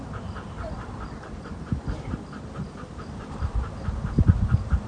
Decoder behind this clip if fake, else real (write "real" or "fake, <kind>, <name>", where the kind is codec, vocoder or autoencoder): fake, vocoder, BigVGAN v2